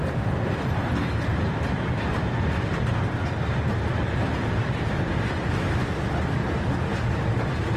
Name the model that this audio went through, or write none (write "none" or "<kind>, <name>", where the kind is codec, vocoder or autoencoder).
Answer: none